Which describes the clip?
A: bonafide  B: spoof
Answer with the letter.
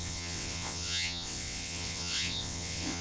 B